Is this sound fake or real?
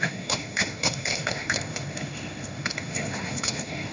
fake